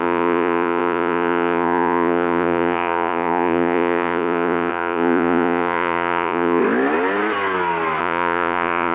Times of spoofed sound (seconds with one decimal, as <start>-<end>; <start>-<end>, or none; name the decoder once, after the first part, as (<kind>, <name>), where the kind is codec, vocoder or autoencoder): 0.0-6.6 (vocoder, Vocos); 8.0-8.9